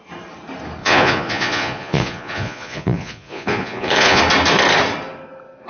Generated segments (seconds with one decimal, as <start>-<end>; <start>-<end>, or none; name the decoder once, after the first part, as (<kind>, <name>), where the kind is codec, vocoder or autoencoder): 0.8-4.2 (vocoder, Vocos)